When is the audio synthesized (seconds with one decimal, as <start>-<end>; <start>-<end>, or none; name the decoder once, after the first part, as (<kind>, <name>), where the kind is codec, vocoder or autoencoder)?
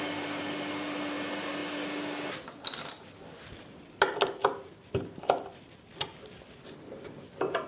none